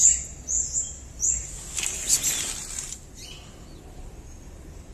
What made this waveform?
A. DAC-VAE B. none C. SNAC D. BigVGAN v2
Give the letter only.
B